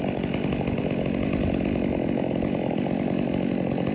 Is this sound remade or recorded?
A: recorded